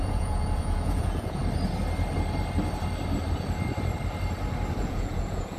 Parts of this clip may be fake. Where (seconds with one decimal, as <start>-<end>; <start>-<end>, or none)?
0.0-1.4; 4.8-5.6